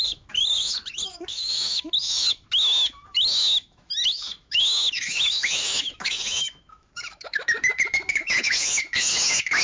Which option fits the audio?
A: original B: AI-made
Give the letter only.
B